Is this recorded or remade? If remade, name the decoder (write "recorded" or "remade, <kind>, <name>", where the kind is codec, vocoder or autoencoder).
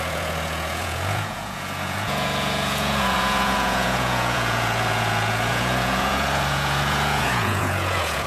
remade, vocoder, Vocos